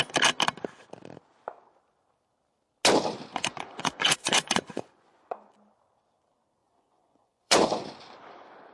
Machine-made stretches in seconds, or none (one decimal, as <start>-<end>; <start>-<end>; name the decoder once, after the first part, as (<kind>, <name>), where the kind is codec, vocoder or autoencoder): 3.3-5.5 (vocoder, Vocos); 6.6-8.0